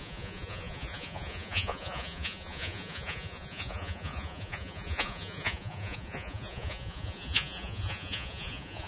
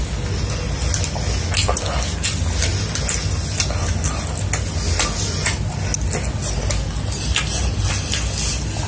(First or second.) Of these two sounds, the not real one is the first